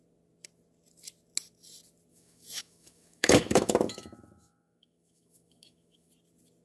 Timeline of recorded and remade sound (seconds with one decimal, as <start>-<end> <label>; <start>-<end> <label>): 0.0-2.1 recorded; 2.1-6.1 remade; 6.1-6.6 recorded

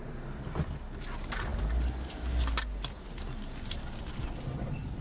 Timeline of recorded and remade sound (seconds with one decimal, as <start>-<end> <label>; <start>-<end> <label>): 0.0-5.0 recorded

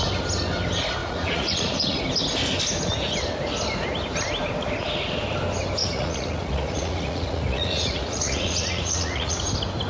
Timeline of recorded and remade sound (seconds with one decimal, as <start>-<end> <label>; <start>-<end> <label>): 0.0-1.0 recorded; 1.0-2.0 remade; 2.0-5.8 recorded; 5.8-9.4 remade; 9.4-9.9 recorded